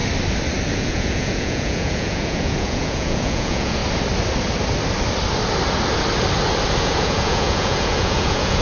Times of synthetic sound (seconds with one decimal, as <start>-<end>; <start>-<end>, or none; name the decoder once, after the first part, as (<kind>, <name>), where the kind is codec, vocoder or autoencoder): 0.7-3.8 (vocoder, Vocos); 6.8-8.6